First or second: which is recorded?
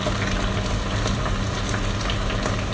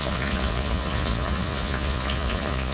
first